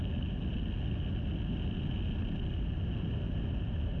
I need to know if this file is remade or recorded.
recorded